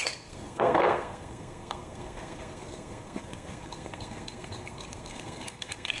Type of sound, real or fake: fake